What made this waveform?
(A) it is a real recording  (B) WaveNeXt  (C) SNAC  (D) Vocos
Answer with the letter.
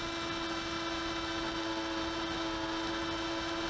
A